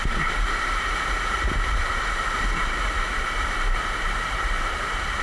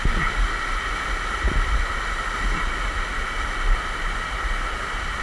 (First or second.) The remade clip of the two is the first